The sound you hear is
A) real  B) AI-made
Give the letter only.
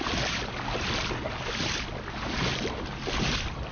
A